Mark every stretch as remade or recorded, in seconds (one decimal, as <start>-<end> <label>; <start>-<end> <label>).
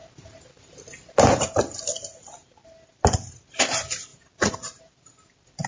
0.0-5.7 recorded